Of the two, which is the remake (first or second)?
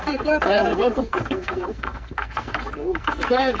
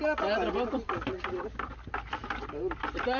first